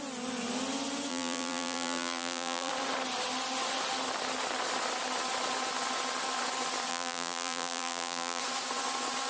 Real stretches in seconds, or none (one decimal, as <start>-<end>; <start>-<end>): 0.0-1.1; 2.7-6.9; 8.4-9.3